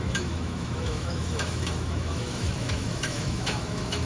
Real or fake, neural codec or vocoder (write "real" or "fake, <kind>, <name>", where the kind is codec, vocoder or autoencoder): fake, autoencoder, DAC-VAE